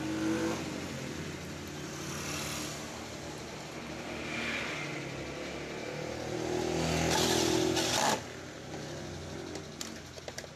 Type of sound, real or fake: real